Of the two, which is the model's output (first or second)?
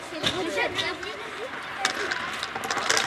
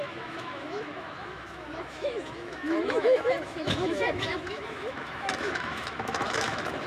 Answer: second